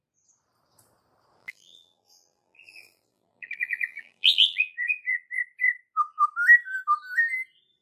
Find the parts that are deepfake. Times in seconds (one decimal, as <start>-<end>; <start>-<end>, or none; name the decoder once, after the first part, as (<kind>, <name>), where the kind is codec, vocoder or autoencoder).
1.4-5.3 (vocoder, BigVGAN v2)